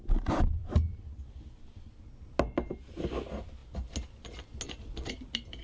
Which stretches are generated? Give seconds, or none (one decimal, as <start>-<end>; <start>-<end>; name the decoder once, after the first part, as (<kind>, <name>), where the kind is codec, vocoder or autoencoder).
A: none